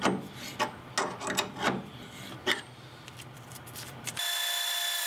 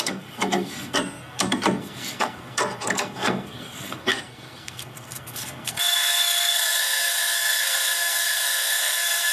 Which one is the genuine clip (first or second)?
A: first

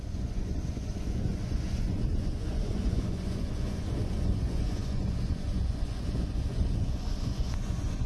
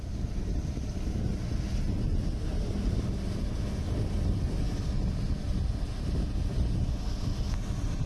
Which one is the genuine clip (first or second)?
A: second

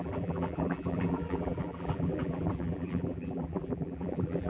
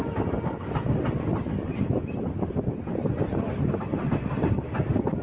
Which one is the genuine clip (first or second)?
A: second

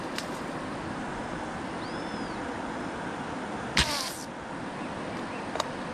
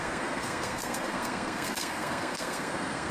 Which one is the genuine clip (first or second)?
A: first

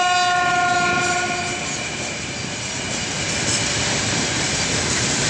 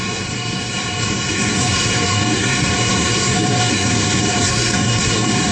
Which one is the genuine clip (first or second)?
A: first